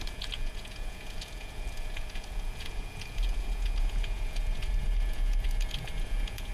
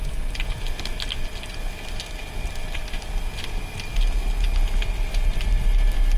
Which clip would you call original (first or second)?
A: second